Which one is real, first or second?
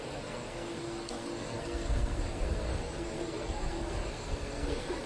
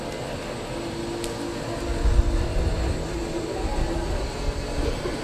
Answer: second